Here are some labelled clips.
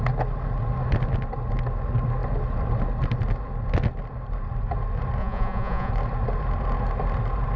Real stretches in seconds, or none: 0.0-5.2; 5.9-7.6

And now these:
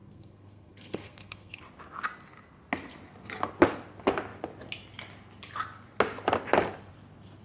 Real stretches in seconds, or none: 1.6-7.4

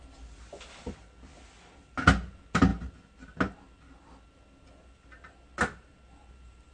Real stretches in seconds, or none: 0.0-6.7

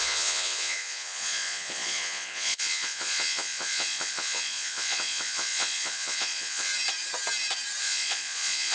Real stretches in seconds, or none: 6.7-7.8

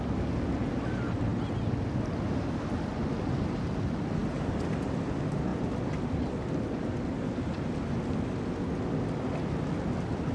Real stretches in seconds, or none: 0.0-10.3

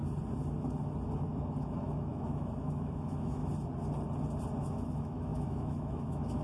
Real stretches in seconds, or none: 0.0-1.6; 3.4-4.6

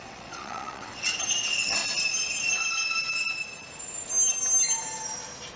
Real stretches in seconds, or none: 1.8-5.6